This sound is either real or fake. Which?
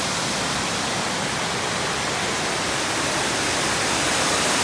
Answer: real